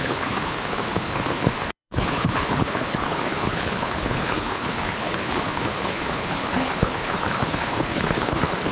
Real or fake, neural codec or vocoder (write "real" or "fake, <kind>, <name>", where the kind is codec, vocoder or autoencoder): fake, codec, HILCodec